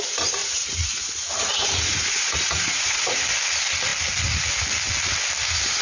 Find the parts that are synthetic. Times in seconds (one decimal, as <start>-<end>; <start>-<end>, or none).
0.4-3.2